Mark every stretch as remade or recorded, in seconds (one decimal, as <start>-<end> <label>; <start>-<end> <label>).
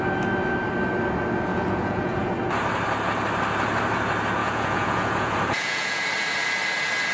0.0-1.5 recorded; 1.5-2.3 remade; 2.3-4.4 recorded; 4.4-6.0 remade; 6.0-7.1 recorded